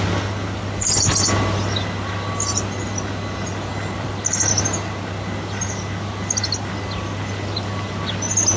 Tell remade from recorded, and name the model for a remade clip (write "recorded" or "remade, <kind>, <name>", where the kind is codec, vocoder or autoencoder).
recorded